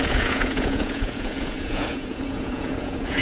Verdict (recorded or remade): remade